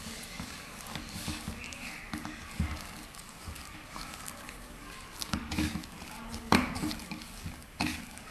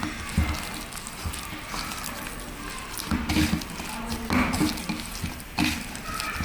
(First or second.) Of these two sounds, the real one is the second